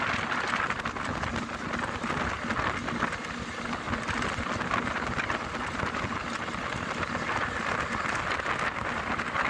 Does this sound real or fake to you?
real